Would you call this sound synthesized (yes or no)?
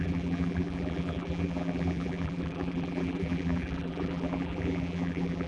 yes